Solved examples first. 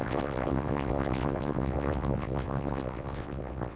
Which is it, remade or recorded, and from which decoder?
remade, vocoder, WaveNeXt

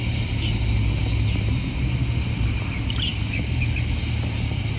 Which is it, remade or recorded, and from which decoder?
recorded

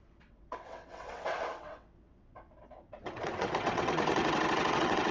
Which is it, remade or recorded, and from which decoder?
remade, vocoder, WaveNeXt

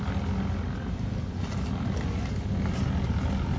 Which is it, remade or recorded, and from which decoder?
recorded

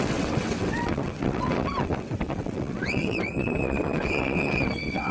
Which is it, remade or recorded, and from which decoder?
remade, vocoder, WaveNeXt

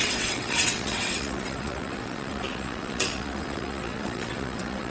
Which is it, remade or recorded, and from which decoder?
remade, vocoder, WaveNeXt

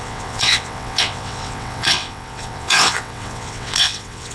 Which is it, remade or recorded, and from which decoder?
remade, vocoder, WaveNeXt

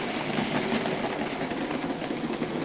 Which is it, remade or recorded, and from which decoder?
recorded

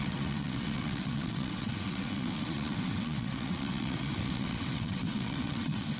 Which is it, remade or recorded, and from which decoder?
remade, vocoder, WaveNeXt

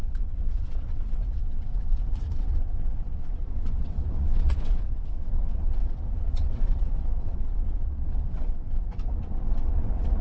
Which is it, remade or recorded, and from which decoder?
remade, vocoder, WaveNeXt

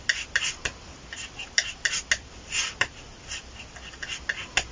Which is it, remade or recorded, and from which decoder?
recorded